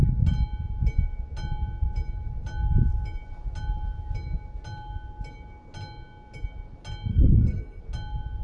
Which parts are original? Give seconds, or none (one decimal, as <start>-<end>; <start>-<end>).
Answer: 0.0-7.1; 7.8-8.4